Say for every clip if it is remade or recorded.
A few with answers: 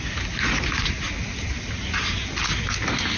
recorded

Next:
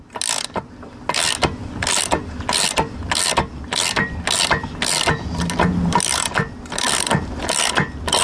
recorded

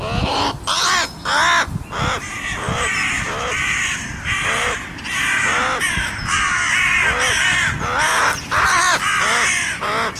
recorded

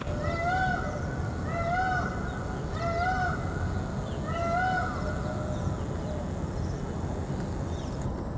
recorded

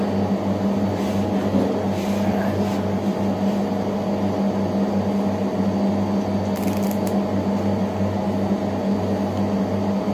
recorded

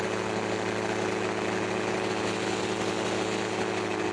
recorded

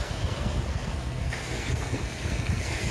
remade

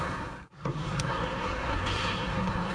remade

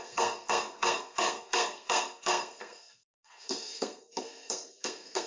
remade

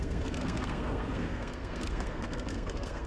remade